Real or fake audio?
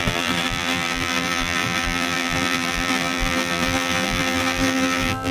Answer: fake